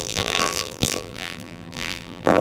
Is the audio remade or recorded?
remade